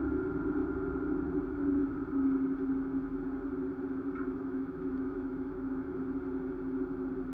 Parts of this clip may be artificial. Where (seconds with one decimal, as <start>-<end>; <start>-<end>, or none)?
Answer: 4.5-6.0